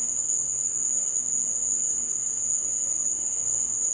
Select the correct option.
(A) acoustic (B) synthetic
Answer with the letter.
B